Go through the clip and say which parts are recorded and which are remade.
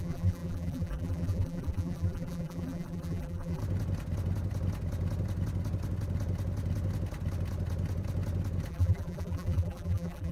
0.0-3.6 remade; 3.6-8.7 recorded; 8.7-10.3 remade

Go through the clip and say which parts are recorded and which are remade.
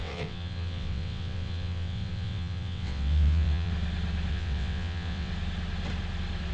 0.0-3.7 remade; 3.7-4.3 recorded; 4.3-5.3 remade; 5.3-6.5 recorded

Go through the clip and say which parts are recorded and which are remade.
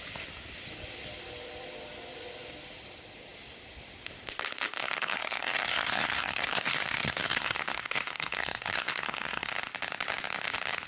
0.0-4.8 recorded; 4.8-9.5 remade; 9.5-10.9 recorded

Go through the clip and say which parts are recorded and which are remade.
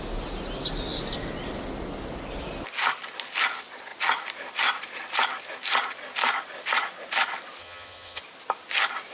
0.0-7.6 recorded; 7.6-8.2 remade; 8.2-9.1 recorded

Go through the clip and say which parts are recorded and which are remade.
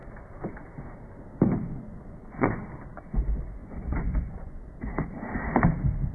0.0-1.6 recorded; 1.6-2.6 remade; 2.6-3.6 recorded; 3.6-4.6 remade; 4.6-6.1 recorded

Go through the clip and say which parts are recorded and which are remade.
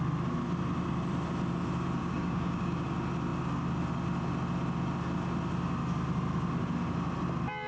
0.0-2.0 recorded; 2.0-2.9 remade; 2.9-7.7 recorded